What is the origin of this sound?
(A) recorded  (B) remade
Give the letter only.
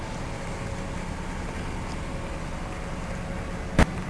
A